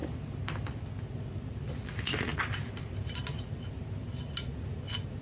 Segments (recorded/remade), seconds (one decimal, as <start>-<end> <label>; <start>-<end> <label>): 0.0-2.3 recorded; 2.3-3.2 remade; 3.2-5.2 recorded